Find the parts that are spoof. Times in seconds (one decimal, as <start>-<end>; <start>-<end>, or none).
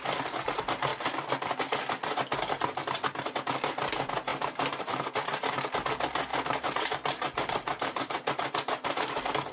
4.3-5.1; 6.3-9.1